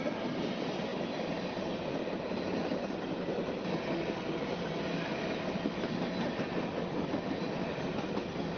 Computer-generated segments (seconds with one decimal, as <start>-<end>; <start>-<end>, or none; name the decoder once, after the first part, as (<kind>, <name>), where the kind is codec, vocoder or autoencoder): none